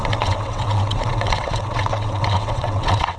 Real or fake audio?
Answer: fake